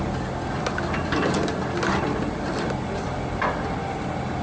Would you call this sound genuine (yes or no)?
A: yes